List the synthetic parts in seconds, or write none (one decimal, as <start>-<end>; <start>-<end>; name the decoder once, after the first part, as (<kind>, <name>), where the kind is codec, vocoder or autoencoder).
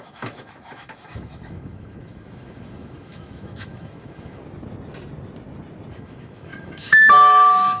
0.0-4.4 (autoencoder, DAC-VAE); 5.9-7.8